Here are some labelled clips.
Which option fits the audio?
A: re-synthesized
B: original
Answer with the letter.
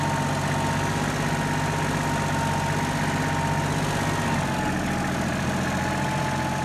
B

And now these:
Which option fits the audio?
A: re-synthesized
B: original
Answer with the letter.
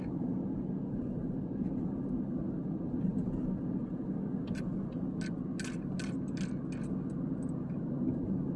B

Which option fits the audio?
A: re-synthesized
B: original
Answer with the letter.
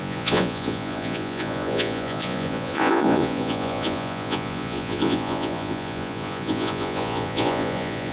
A